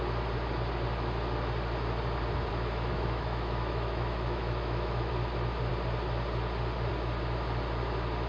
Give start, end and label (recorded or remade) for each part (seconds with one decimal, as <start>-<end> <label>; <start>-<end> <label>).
0.0-2.5 recorded; 2.5-5.1 remade; 5.1-8.3 recorded